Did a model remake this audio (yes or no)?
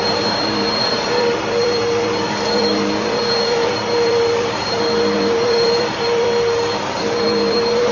yes